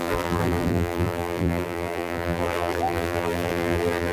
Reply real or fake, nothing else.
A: fake